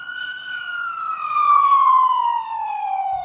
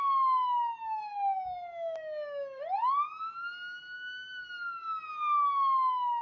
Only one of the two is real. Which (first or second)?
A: second